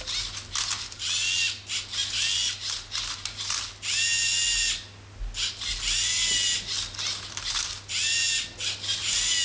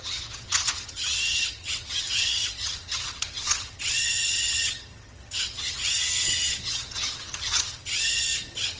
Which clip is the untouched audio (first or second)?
first